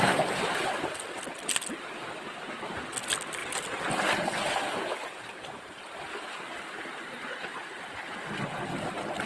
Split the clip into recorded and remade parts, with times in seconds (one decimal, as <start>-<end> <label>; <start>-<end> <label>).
0.0-9.3 recorded